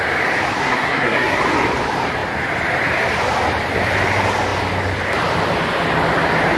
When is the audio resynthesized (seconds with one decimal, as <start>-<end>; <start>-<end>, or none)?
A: 0.6-1.4